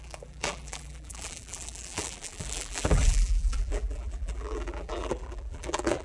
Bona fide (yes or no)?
no